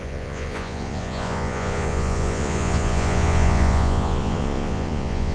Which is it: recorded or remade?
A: remade